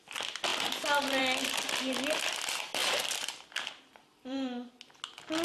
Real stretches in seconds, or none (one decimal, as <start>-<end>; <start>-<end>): 0.0-2.8; 4.7-5.4